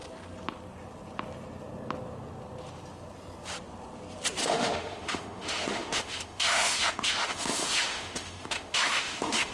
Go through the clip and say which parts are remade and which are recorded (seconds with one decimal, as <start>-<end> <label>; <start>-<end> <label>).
0.0-4.4 recorded; 4.4-9.5 remade